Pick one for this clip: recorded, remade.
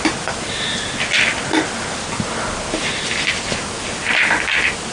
recorded